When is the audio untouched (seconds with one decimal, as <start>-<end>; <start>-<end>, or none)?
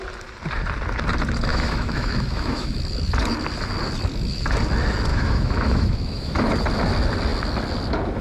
0.0-1.5; 2.8-5.1; 6.5-8.2